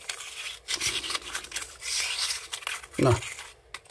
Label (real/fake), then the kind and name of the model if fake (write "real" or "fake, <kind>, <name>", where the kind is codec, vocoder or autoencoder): real